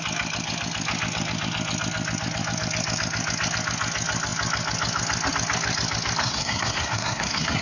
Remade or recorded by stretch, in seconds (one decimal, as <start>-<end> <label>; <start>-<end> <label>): 0.0-6.2 recorded; 6.2-7.6 remade